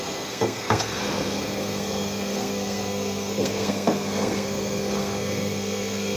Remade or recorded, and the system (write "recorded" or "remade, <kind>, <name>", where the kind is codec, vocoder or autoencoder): remade, codec, SNAC